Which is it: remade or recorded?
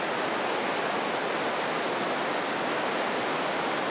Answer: recorded